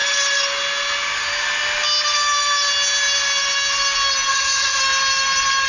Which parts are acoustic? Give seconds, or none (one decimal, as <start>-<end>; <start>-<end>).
0.0-4.3; 4.8-5.7